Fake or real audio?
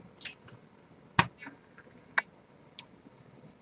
real